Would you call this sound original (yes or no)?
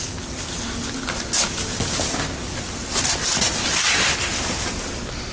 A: yes